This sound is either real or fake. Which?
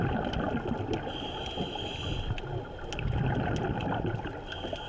real